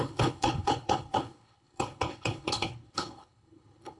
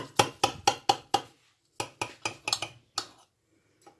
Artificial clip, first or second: first